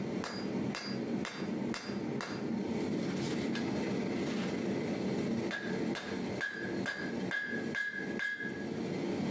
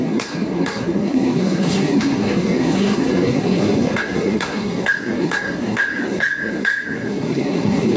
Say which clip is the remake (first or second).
second